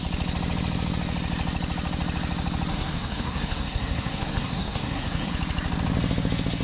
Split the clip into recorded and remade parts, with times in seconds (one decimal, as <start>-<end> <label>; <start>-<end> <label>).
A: 0.0-2.7 recorded; 2.7-5.3 remade; 5.3-6.6 recorded